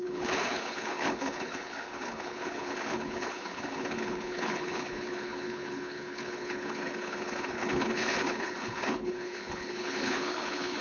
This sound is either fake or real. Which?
fake